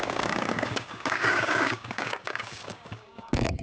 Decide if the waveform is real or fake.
fake